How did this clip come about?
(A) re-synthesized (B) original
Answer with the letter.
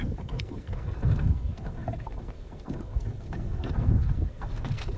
A